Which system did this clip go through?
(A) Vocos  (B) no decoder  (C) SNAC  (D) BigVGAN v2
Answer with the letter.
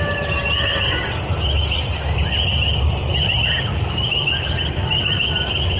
B